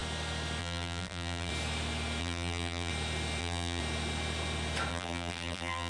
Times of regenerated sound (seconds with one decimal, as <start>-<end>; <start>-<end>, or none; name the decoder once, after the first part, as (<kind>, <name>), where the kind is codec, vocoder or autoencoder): 0.6-1.5 (vocoder, BigVGAN v2); 2.2-2.9; 3.4-3.8; 4.9-5.9